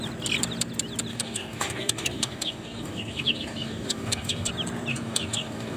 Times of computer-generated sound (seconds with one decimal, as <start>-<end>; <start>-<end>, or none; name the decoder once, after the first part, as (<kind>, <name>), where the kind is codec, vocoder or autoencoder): 1.1-4.5 (codec, DAC); 4.9-5.8